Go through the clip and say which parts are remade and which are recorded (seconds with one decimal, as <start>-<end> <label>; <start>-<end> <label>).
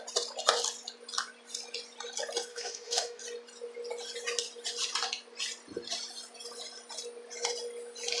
0.0-2.5 recorded; 2.5-3.2 remade; 3.2-8.2 recorded